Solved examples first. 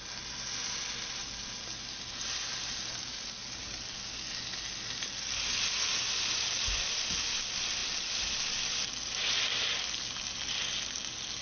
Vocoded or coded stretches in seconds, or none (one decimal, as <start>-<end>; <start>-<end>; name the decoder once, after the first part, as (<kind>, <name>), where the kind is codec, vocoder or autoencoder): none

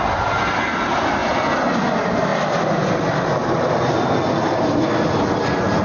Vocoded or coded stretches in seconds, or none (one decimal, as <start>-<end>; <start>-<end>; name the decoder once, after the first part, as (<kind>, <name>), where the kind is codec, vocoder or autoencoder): none

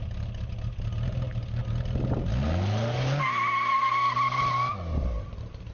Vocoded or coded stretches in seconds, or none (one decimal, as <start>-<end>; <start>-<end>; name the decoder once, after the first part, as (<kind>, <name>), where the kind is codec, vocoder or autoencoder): none

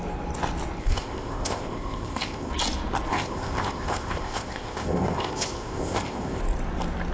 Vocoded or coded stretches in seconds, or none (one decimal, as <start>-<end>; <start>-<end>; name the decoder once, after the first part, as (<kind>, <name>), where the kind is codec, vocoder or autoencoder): 0.8-2.5 (codec, ZipCodec); 3.1-6.4

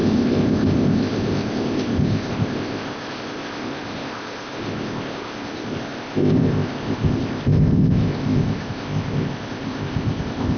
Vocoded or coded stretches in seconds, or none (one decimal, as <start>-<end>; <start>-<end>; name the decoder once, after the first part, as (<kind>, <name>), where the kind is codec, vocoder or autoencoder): 0.0-10.6 (codec, ZipCodec)

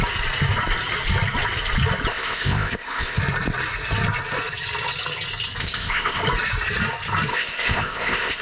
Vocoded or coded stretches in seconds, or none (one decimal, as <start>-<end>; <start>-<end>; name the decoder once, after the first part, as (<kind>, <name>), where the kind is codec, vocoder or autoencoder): 2.1-3.2 (codec, ZipCodec); 5.6-6.2; 7.3-8.4

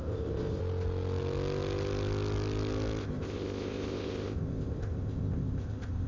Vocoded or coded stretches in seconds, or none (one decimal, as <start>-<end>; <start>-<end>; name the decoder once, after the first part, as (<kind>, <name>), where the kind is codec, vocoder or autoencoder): 0.0-0.6 (codec, ZipCodec); 3.0-6.1